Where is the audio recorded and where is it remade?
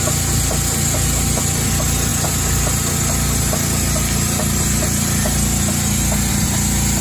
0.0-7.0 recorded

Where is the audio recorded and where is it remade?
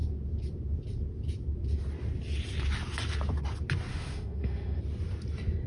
0.0-3.9 recorded; 3.9-4.8 remade; 4.8-5.7 recorded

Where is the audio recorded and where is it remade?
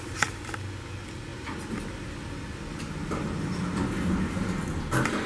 0.0-5.3 recorded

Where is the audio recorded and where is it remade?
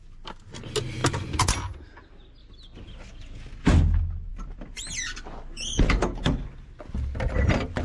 0.0-7.8 recorded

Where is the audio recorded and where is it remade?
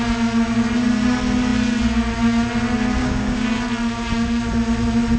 0.0-3.0 recorded; 3.0-3.6 remade; 3.6-5.2 recorded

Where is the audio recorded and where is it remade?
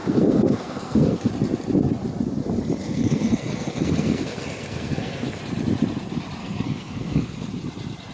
0.0-1.3 remade; 1.3-2.8 recorded; 2.8-5.4 remade; 5.4-6.4 recorded; 6.4-7.5 remade; 7.5-8.1 recorded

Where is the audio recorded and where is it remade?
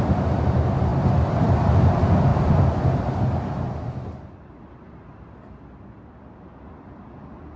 0.0-7.6 recorded